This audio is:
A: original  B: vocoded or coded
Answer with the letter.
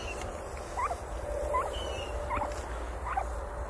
A